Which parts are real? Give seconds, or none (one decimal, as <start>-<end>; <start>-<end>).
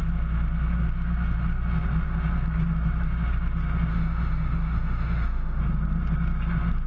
0.0-3.9; 5.6-6.9